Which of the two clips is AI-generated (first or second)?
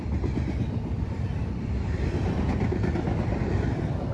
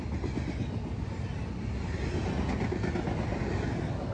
first